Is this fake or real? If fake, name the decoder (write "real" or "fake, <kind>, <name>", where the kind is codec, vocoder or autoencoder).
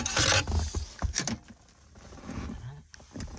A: real